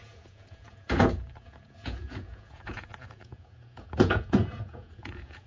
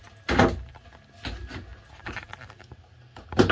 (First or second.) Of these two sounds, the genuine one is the second